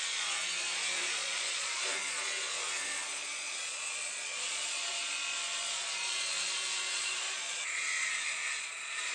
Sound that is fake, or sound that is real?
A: fake